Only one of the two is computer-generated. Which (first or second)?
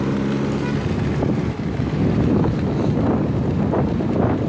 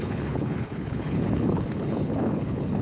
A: second